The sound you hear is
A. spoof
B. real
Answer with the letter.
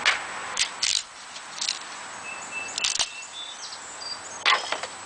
B